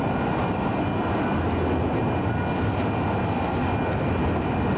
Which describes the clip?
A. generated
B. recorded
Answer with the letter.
B